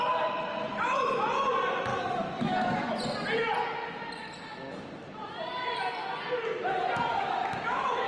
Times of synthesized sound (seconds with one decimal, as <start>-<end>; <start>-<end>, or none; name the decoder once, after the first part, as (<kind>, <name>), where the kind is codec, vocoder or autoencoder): 0.5-1.1 (autoencoder, DAC-VAE); 1.9-2.9; 7.1-8.1